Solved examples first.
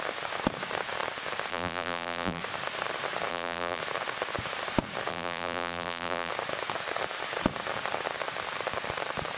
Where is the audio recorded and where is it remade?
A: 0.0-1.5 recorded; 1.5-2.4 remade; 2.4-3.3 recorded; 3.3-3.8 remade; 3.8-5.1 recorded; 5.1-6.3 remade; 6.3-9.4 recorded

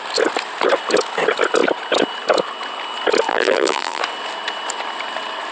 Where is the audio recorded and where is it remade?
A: 0.0-3.3 recorded; 3.3-4.0 remade; 4.0-5.5 recorded

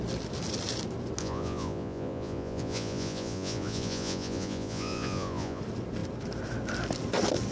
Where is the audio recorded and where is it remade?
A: 0.0-1.2 recorded; 1.2-5.6 remade; 5.6-7.5 recorded